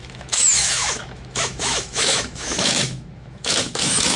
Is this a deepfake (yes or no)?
yes